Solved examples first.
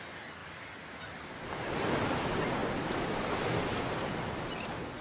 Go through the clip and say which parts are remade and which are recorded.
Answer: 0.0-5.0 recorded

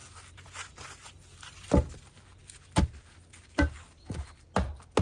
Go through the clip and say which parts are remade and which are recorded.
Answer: 0.0-5.0 recorded

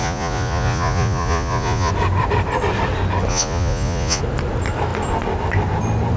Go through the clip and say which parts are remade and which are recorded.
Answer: 0.0-1.9 remade; 1.9-3.3 recorded; 3.3-4.2 remade; 4.2-6.2 recorded

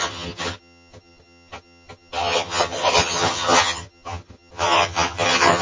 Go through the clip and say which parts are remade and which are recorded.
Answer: 0.0-5.6 remade

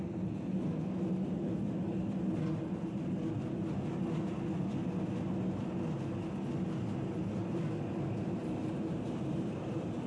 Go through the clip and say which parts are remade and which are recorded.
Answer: 0.0-8.4 recorded; 8.4-10.1 remade

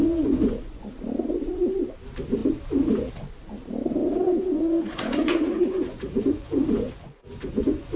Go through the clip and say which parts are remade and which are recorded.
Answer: 0.0-0.8 remade; 0.8-4.0 recorded; 4.0-8.0 remade

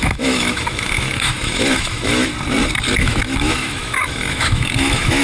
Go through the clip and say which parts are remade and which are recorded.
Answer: 0.0-2.3 remade; 2.3-3.0 recorded; 3.0-5.2 remade

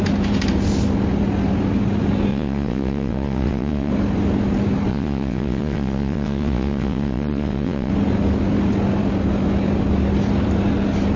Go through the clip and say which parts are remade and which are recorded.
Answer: 0.0-2.3 recorded; 2.3-3.9 remade; 3.9-4.9 recorded; 4.9-7.9 remade; 7.9-11.2 recorded